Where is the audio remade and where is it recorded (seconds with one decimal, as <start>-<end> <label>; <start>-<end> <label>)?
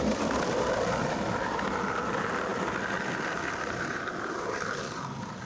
0.0-2.5 remade; 2.5-3.2 recorded; 3.2-5.4 remade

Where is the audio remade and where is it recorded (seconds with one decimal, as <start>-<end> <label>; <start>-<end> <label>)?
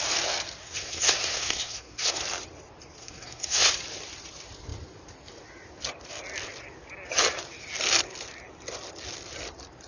0.0-0.6 recorded; 0.6-2.2 remade; 2.2-3.0 recorded; 3.0-3.7 remade; 3.7-9.9 recorded